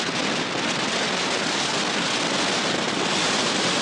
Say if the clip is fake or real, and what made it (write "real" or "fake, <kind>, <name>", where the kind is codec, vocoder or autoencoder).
real